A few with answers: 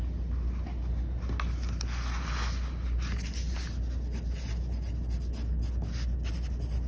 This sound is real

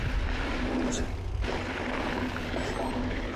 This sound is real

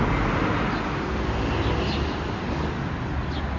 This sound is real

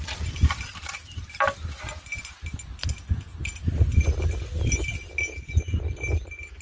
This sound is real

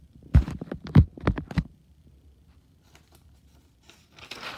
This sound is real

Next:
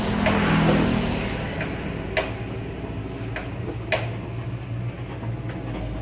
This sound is real